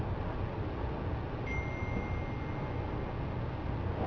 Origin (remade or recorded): recorded